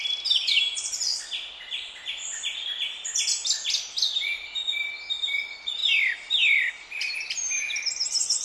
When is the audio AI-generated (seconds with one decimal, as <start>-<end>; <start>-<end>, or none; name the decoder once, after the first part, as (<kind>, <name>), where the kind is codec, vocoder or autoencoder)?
none